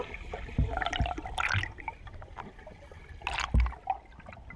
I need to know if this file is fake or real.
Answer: real